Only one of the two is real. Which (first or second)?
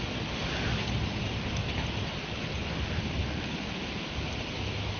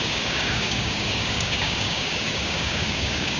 first